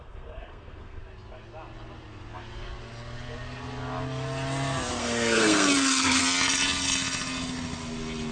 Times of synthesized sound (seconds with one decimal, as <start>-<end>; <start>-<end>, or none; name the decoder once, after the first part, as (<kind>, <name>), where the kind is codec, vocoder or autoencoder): 0.0-1.0 (codec, SNAC); 5.0-6.2